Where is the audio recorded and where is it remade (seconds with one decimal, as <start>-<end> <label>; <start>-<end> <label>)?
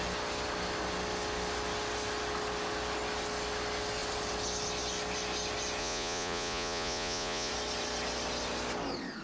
0.0-5.8 recorded; 5.8-7.5 remade; 7.5-9.2 recorded